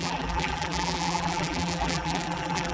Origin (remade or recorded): remade